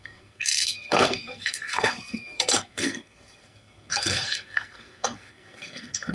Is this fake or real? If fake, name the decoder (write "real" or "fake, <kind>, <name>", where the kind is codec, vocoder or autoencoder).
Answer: fake, codec, SNAC